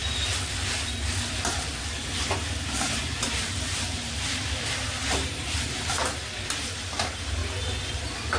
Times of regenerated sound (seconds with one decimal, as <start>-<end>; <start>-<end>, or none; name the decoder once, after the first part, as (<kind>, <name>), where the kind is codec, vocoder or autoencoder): 2.0-6.2 (vocoder, BigVGAN v2); 6.8-7.4; 8.0-8.4